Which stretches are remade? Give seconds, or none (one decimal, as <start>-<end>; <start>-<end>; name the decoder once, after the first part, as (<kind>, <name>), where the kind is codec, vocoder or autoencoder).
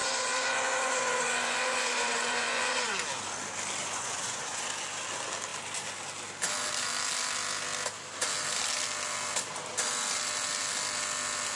0.0-2.9 (vocoder, Vocos); 3.8-4.6